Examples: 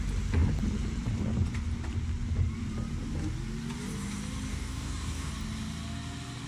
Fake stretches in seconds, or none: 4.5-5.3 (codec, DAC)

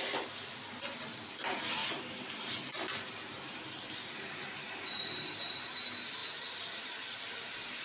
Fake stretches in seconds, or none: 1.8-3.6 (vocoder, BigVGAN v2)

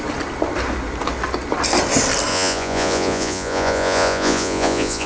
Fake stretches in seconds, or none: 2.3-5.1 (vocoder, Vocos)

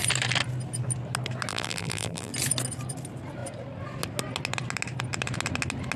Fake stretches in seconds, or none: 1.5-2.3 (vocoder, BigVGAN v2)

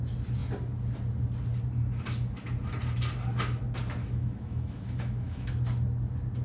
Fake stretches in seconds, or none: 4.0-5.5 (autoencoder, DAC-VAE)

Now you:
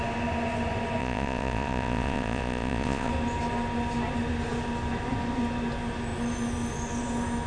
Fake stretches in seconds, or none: 1.0-3.1 (vocoder, Vocos)

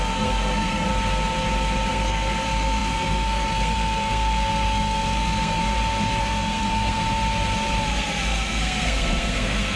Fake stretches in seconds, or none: 0.0-0.9 (codec, SNAC); 1.9-5.6; 6.2-7.0; 7.9-9.8